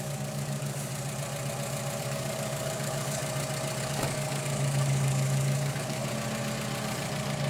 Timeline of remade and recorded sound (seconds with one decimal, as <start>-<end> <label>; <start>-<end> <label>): 0.0-0.9 remade; 0.9-2.0 recorded; 2.0-3.2 remade; 3.2-3.8 recorded; 3.8-6.0 remade; 6.0-7.5 recorded